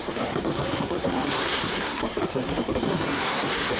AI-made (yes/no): yes